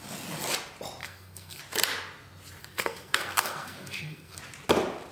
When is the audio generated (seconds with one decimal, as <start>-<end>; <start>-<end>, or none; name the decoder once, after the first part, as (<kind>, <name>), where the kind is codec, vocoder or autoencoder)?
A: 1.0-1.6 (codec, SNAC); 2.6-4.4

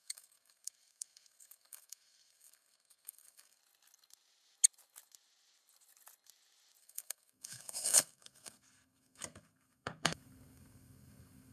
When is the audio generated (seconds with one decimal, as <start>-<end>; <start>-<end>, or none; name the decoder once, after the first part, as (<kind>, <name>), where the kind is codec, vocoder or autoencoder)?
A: 0.0-3.6 (codec, SNAC); 6.8-11.5

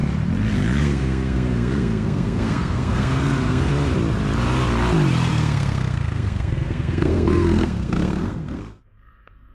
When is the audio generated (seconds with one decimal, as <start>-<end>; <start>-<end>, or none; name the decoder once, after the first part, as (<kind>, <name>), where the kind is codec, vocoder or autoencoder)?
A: 0.8-3.7 (codec, SNAC); 5.3-9.5

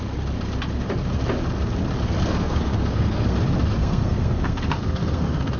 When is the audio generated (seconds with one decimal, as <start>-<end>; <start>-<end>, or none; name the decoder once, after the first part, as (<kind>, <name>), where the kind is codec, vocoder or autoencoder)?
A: 2.3-3.4 (codec, SNAC); 3.8-5.6

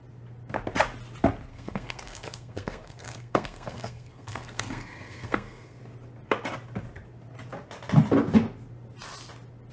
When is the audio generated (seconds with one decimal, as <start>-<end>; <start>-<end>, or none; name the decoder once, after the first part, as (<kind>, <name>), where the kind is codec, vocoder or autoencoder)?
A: 1.5-5.8 (codec, SNAC)

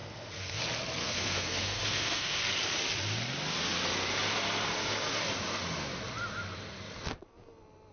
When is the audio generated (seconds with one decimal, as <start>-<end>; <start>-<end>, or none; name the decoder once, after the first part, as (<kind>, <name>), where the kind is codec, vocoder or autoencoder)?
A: 0.0-0.6 (codec, SNAC); 1.0-2.4

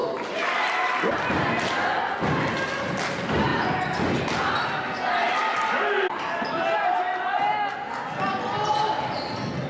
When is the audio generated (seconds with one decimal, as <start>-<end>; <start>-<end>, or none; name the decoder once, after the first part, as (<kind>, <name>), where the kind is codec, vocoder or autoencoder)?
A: none